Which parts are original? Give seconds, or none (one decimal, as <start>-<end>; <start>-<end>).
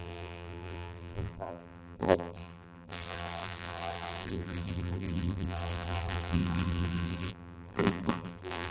none